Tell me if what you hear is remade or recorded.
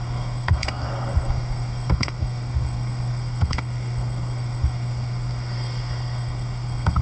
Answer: remade